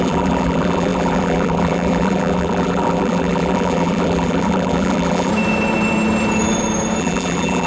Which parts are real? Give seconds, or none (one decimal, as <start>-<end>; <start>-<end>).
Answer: 5.3-7.0

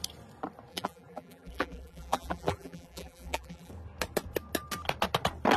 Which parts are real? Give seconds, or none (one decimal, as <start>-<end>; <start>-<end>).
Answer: 0.0-0.7; 3.7-5.6

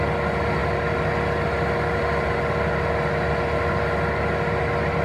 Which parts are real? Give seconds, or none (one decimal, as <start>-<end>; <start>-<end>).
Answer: 0.0-5.0

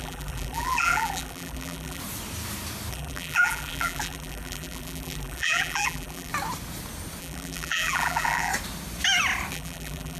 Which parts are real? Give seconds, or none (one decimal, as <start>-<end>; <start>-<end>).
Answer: 2.0-2.9; 6.3-7.2; 8.5-9.5

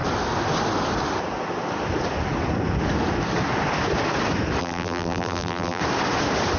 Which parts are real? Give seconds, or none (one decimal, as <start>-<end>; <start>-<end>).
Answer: 0.0-4.6; 5.8-6.6

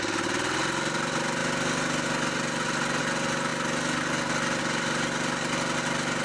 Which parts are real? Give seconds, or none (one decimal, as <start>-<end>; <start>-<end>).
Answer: 0.0-6.2

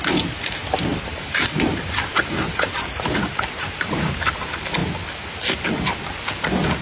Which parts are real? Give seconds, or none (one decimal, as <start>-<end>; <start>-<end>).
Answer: 0.0-0.9; 4.3-6.8